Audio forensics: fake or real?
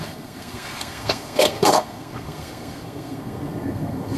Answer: fake